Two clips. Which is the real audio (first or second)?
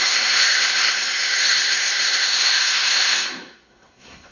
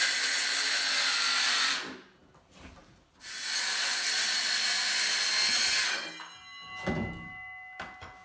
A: second